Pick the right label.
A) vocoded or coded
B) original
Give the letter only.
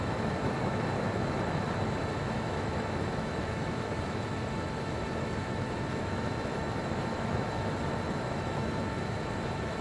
A